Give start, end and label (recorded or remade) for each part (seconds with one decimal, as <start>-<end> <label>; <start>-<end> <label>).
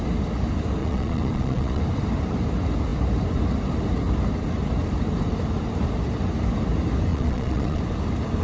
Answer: 0.0-0.8 recorded; 0.8-1.8 remade; 1.8-7.1 recorded; 7.1-7.8 remade; 7.8-8.4 recorded